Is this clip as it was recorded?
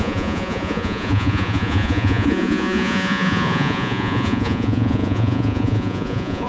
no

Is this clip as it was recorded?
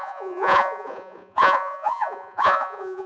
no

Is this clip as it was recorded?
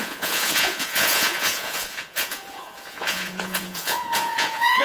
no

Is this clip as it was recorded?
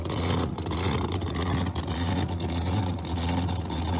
no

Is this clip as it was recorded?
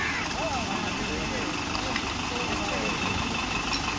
yes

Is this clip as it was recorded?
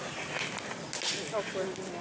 yes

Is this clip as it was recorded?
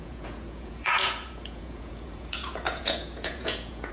no